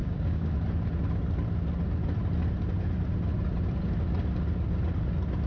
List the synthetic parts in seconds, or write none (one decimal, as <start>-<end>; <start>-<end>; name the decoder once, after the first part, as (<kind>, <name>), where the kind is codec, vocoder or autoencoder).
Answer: 0.0-0.5 (codec, DAC)